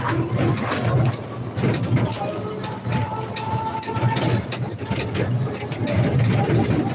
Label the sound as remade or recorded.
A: recorded